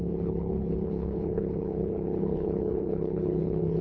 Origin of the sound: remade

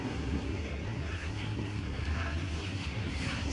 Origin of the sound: remade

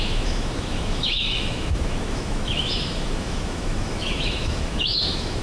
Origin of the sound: remade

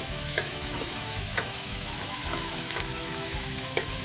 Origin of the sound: remade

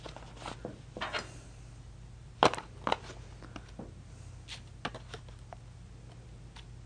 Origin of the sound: recorded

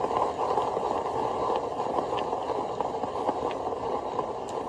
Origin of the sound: recorded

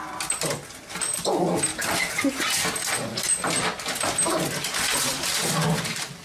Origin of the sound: recorded